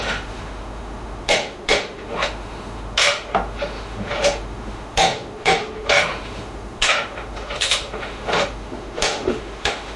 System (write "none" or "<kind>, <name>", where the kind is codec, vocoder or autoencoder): autoencoder, DAC-VAE